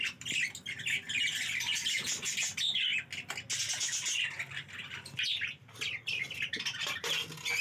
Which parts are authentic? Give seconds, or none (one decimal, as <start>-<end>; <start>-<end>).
0.0-7.6